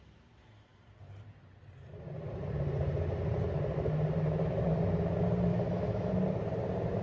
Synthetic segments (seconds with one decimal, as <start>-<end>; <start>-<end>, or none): 5.5-6.1